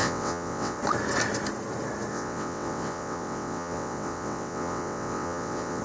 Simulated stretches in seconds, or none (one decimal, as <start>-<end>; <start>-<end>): 0.0-0.8; 2.1-5.8